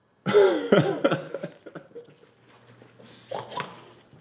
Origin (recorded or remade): recorded